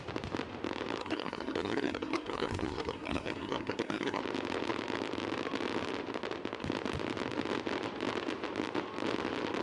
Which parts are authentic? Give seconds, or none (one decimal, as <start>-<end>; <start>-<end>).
0.0-1.0; 4.2-9.6

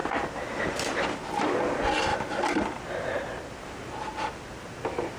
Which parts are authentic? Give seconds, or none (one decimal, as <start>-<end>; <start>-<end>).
1.0-2.1; 2.8-5.2

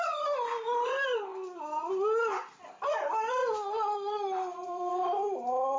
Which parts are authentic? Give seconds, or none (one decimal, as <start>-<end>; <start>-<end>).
0.0-3.4; 4.9-5.8

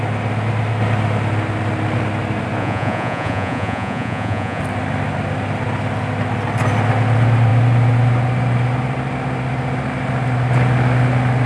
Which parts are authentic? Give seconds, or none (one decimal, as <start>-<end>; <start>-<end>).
0.0-2.6; 4.6-11.5